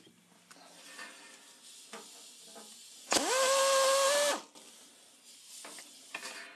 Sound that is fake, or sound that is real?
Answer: real